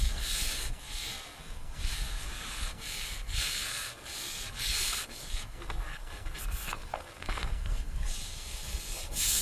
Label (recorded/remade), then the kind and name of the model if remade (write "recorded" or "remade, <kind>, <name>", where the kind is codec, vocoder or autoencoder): remade, codec, SNAC